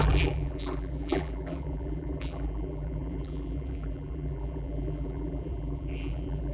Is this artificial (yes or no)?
yes